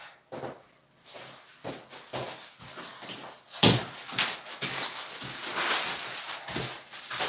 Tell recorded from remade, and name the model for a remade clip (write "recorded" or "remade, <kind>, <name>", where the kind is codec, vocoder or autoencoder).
recorded